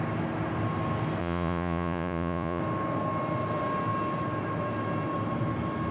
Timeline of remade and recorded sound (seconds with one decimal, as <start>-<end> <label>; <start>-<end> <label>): 0.0-1.2 recorded; 1.2-2.6 remade; 2.6-5.9 recorded